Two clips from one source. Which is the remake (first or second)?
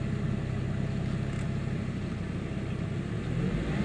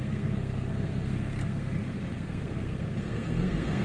second